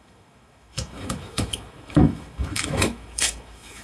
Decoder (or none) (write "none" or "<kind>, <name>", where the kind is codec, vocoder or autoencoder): autoencoder, DAC-VAE